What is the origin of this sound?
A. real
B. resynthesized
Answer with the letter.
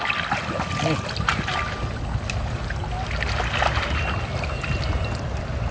A